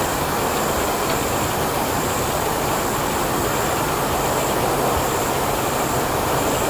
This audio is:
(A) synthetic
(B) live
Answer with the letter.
B